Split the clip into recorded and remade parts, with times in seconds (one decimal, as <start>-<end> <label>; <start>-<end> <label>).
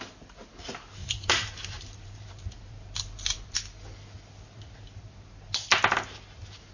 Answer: 0.0-1.0 recorded; 1.0-3.6 remade; 3.6-6.7 recorded